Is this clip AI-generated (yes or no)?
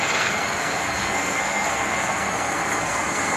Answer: yes